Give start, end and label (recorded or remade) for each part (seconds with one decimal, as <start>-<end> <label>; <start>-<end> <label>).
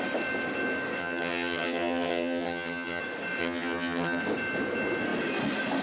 0.0-1.0 recorded; 1.0-3.0 remade; 3.0-3.4 recorded; 3.4-4.2 remade; 4.2-5.8 recorded